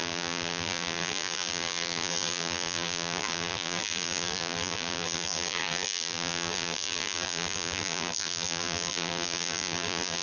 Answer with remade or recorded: remade